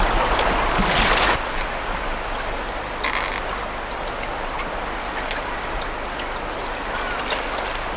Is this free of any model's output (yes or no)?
yes